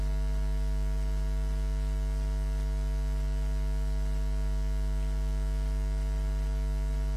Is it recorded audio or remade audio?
recorded